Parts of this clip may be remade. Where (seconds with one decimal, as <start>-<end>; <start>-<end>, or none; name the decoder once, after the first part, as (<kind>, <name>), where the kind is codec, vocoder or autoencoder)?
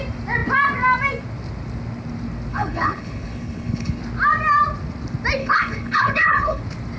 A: 2.5-4.0 (codec, HILCodec); 5.4-6.6